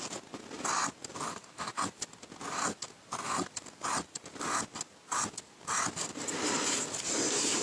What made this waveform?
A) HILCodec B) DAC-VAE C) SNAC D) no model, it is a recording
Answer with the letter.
D